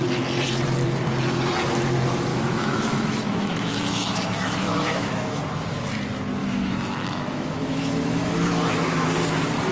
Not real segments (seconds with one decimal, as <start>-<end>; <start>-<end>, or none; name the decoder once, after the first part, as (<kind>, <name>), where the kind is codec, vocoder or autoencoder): 2.3-5.4 (autoencoder, DAC-VAE); 6.4-8.7